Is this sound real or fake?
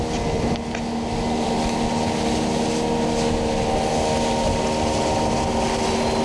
real